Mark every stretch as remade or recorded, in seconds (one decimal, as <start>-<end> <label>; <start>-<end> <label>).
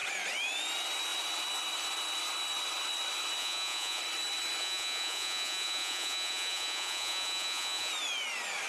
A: 0.0-3.4 recorded; 3.4-4.0 remade; 4.0-4.6 recorded; 4.6-7.9 remade; 7.9-8.7 recorded